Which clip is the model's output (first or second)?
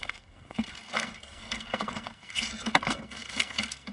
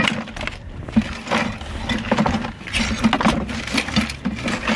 first